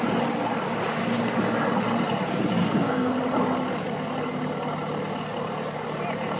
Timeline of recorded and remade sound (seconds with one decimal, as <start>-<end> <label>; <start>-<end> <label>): 0.0-2.6 recorded; 2.6-3.1 remade; 3.1-6.4 recorded